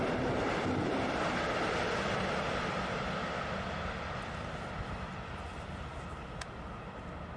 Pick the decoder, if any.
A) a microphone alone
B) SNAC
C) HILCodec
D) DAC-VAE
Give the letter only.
A